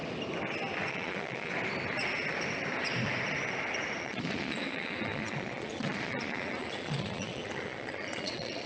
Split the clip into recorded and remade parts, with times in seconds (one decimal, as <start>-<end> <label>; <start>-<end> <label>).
0.0-0.9 recorded; 0.9-1.5 remade; 1.5-4.0 recorded; 4.0-8.7 remade